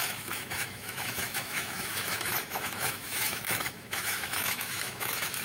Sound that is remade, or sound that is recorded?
remade